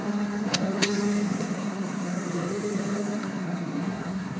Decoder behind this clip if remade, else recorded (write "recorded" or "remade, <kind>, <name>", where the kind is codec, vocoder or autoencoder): remade, codec, SNAC